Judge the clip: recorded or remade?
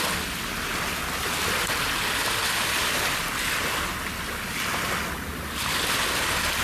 recorded